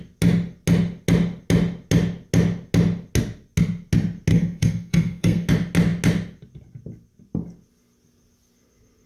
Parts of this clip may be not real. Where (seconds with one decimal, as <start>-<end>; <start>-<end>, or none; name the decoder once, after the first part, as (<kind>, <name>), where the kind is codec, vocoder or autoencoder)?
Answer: 4.3-5.5 (codec, SNAC)